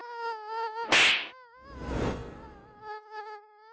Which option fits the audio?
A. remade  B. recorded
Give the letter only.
B